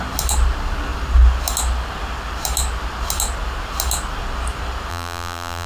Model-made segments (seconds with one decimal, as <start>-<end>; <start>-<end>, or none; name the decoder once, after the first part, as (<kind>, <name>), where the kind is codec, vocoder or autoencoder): 4.9-5.7 (vocoder, BigVGAN v2)